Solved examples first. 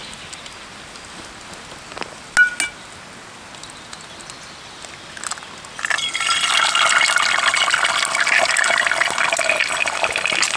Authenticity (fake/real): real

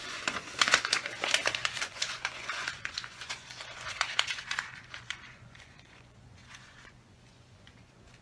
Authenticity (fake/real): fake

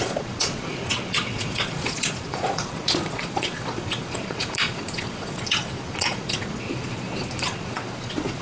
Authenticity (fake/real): fake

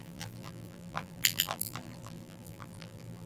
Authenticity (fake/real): fake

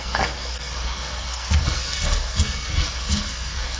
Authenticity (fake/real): fake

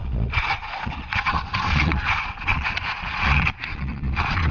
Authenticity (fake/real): fake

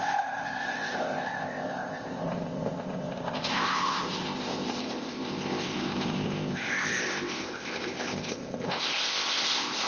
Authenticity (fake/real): fake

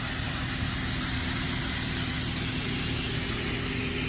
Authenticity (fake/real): real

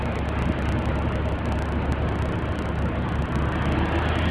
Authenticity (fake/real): real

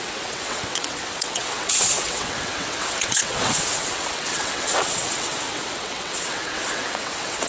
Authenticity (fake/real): fake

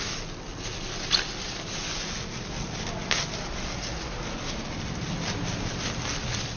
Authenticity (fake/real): real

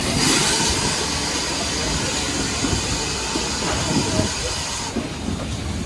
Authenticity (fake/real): real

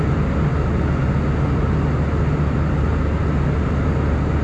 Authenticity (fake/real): real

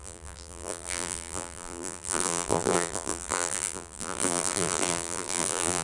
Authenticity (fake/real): fake